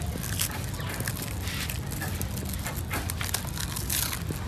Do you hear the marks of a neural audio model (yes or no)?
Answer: no